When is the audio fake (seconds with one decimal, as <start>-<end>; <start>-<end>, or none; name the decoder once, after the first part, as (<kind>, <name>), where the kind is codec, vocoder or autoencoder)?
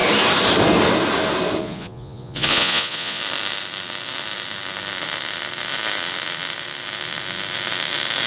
1.6-3.2 (vocoder, Vocos)